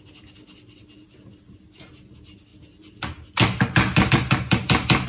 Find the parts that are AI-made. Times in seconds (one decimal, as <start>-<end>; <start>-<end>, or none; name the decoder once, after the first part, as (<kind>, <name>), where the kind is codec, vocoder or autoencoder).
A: none